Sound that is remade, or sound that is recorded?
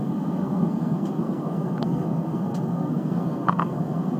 remade